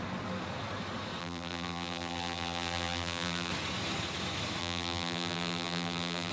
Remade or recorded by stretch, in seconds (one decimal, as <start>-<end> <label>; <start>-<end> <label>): 0.0-1.2 recorded; 1.2-3.5 remade; 3.5-4.6 recorded; 4.6-6.3 remade